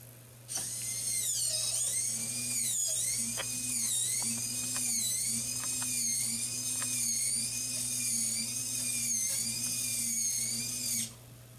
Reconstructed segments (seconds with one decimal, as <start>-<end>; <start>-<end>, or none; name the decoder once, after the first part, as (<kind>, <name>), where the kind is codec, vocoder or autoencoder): none